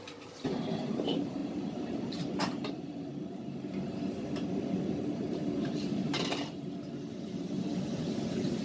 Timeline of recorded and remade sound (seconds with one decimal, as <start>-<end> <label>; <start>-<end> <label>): 0.0-6.0 remade; 6.0-7.2 recorded; 7.2-8.6 remade